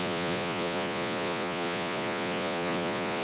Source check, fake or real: fake